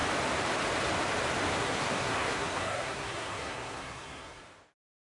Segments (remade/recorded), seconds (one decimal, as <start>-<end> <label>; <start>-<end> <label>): 0.0-1.6 recorded; 1.6-4.4 remade; 4.4-5.2 recorded